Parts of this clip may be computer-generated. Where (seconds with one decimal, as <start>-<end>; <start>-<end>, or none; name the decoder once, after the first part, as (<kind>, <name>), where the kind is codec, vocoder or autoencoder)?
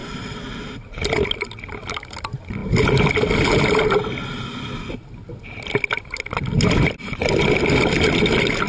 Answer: none